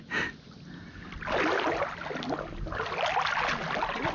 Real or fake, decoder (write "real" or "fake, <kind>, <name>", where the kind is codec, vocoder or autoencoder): real